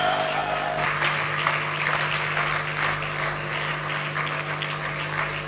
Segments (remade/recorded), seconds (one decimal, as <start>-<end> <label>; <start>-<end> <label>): 0.0-5.5 recorded

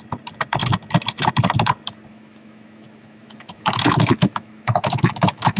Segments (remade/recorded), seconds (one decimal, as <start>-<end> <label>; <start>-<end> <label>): 0.0-2.1 recorded; 2.1-5.6 remade

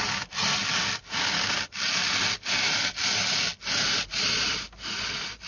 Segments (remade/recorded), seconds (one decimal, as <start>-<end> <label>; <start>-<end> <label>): 0.0-5.5 recorded